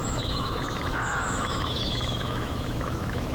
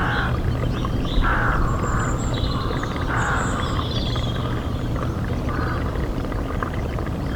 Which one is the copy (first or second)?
first